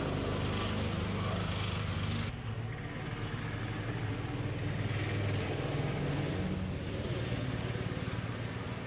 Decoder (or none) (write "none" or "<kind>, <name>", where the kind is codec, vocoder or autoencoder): none